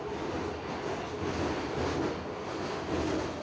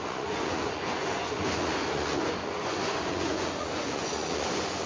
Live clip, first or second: first